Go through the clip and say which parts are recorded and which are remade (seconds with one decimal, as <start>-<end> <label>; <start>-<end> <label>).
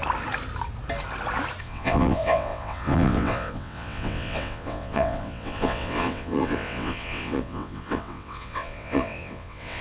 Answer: 0.0-1.6 recorded; 1.6-9.8 remade